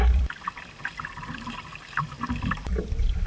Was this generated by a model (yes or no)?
yes